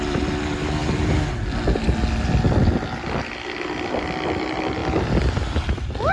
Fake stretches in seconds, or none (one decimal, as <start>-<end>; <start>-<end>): 0.0-0.8; 4.0-4.8